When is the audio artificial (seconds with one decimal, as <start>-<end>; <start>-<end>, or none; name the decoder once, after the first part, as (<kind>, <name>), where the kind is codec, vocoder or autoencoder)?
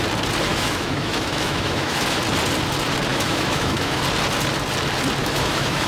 0.5-2.2 (autoencoder, DAC-VAE); 3.1-4.0; 5.2-5.9